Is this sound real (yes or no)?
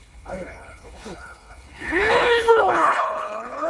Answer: no